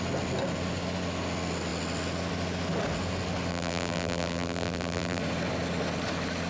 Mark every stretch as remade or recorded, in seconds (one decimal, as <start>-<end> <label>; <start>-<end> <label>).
0.0-3.5 recorded; 3.5-5.2 remade; 5.2-6.5 recorded